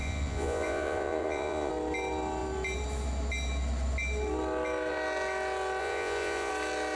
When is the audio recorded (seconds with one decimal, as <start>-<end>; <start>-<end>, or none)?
1.7-5.8; 6.5-7.0